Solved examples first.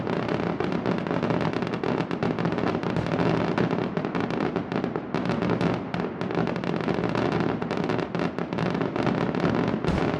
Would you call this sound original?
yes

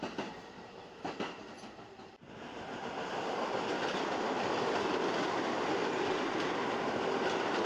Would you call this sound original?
yes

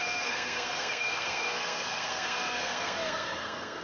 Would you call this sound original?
no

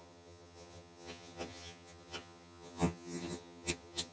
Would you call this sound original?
no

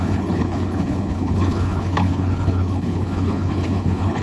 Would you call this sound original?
no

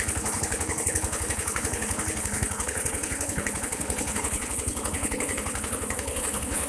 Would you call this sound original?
no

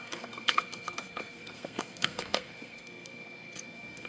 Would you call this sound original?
no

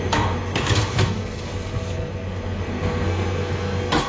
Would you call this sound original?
no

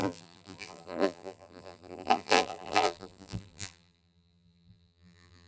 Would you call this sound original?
no